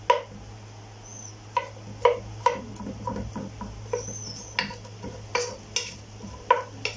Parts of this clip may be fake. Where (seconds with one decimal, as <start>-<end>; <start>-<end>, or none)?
none